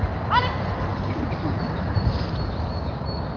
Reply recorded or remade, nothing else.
recorded